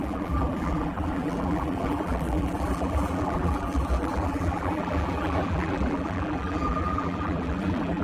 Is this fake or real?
fake